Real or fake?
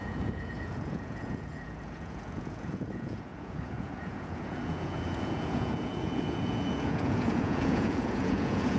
fake